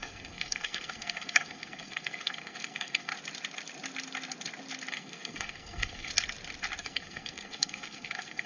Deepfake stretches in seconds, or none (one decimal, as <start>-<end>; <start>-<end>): 0.0-3.1; 4.9-6.1; 6.8-8.5